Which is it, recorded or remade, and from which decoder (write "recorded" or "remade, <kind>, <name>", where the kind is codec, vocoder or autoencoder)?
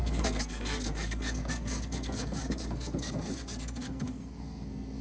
remade, codec, SNAC